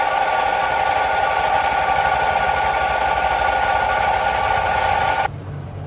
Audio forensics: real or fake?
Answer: real